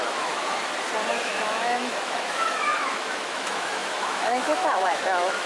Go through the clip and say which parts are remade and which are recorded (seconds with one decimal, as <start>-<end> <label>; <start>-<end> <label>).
0.0-0.5 remade; 0.5-1.1 recorded; 1.1-5.5 remade